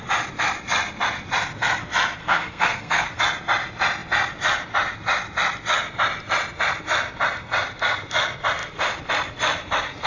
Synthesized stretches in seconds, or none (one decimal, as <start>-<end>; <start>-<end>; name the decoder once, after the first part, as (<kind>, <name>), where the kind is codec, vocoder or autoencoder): 2.2-3.2 (codec, SNAC)